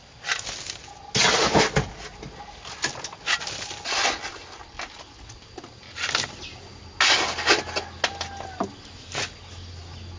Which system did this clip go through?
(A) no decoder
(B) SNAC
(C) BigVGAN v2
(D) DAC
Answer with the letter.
A